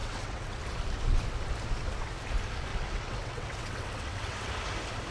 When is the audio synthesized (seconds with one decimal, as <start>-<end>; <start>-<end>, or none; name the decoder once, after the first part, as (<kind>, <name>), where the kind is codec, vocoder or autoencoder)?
0.0-0.6 (vocoder, WaveNeXt); 2.7-4.5